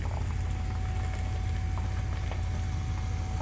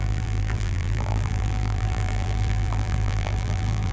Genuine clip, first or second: first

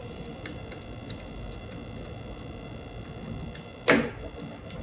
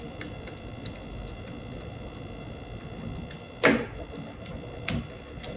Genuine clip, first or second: first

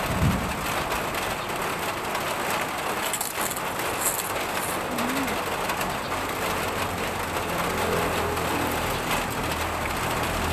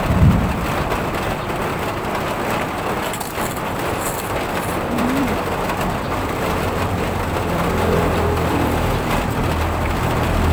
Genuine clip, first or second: first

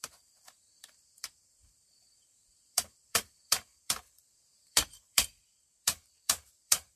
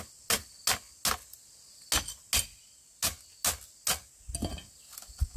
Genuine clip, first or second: second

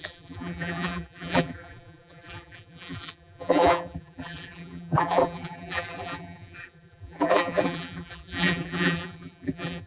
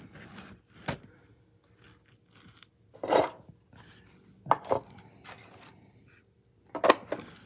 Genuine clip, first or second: second